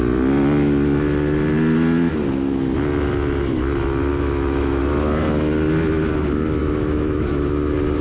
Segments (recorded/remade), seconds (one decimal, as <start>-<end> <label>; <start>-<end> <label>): 0.0-4.1 recorded; 4.1-4.8 remade; 4.8-6.6 recorded; 6.6-7.5 remade; 7.5-8.0 recorded